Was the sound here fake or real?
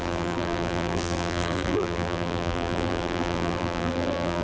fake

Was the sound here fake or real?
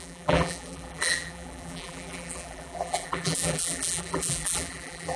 fake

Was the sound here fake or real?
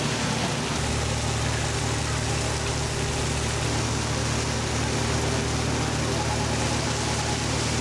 real